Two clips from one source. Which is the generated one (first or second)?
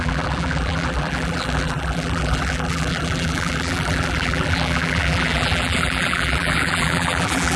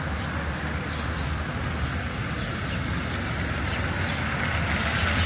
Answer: first